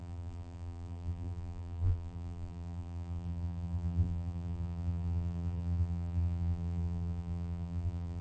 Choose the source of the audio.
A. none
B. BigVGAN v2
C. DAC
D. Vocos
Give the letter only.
B